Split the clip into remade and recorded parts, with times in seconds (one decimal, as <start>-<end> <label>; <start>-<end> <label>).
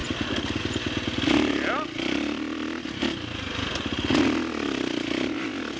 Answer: 0.0-5.8 recorded